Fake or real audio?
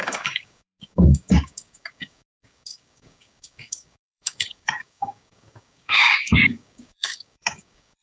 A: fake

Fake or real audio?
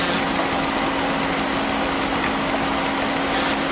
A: real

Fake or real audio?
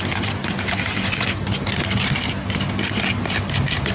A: real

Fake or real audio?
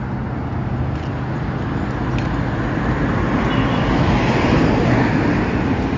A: real